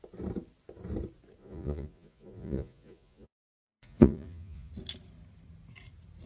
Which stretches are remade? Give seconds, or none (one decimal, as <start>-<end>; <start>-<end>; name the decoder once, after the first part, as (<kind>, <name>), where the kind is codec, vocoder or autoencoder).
1.4-4.7 (vocoder, Vocos)